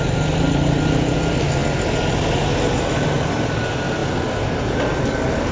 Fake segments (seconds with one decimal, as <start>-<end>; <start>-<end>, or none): none